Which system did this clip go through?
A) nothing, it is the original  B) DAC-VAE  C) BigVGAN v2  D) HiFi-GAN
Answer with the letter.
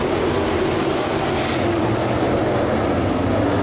A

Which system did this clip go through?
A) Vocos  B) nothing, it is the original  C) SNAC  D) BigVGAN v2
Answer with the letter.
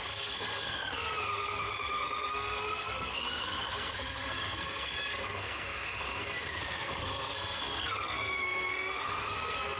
C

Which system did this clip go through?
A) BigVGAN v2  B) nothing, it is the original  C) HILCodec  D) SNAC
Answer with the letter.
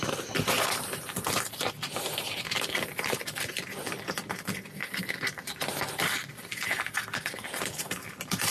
A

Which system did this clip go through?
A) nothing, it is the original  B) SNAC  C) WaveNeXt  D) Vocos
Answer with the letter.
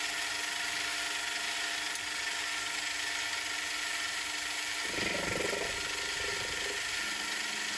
A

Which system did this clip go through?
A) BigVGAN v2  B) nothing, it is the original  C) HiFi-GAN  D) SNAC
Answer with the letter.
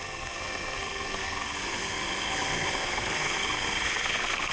D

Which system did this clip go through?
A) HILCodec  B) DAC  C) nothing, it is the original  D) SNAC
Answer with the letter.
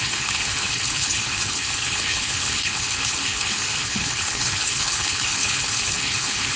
A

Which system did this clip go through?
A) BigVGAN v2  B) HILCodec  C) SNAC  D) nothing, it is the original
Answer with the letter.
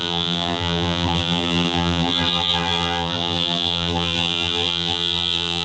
A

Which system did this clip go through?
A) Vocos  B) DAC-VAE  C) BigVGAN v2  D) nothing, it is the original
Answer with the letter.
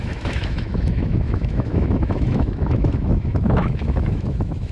B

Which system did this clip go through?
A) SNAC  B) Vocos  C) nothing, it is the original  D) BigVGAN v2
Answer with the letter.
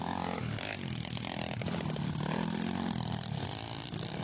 C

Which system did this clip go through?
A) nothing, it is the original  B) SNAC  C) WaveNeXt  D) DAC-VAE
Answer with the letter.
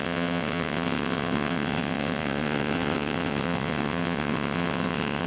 C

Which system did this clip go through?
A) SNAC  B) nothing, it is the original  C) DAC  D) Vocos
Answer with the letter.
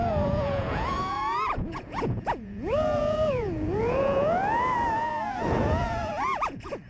D